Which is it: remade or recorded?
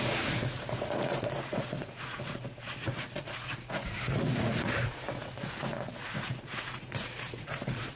remade